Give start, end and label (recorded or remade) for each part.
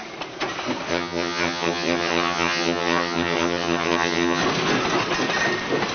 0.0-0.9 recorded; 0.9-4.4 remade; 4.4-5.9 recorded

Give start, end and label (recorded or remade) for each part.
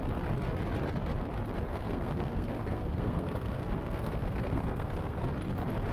0.0-1.7 recorded; 1.7-5.2 remade; 5.2-5.9 recorded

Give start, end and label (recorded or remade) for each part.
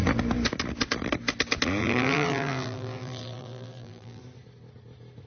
0.0-1.8 recorded; 1.8-4.2 remade; 4.2-5.3 recorded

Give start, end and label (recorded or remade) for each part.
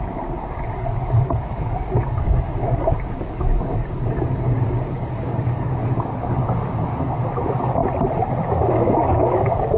0.0-7.8 remade; 7.8-8.5 recorded; 8.5-9.8 remade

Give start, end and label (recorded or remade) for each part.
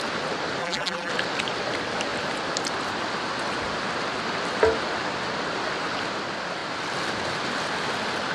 0.0-0.6 recorded; 0.6-1.1 remade; 1.1-8.3 recorded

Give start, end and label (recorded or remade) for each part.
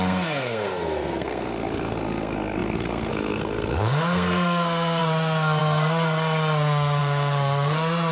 0.0-8.1 remade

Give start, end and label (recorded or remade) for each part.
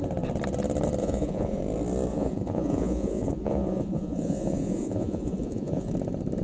0.0-1.0 recorded; 1.0-1.6 remade; 1.6-2.1 recorded; 2.1-5.9 remade; 5.9-6.4 recorded